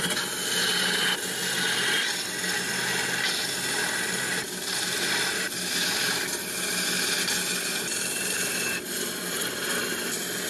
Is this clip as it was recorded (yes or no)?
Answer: yes